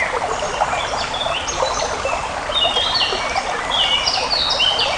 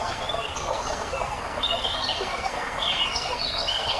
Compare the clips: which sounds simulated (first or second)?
second